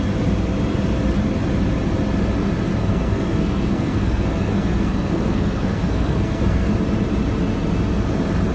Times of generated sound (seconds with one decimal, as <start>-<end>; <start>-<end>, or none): 2.8-6.7